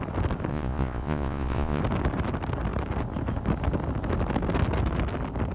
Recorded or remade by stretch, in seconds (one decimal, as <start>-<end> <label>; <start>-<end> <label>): 0.0-0.5 recorded; 0.5-1.8 remade; 1.8-5.5 recorded